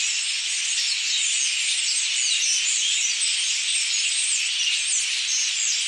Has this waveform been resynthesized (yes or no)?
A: no